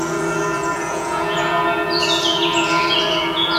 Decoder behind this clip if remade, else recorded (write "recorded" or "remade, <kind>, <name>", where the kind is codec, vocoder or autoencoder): remade, vocoder, Vocos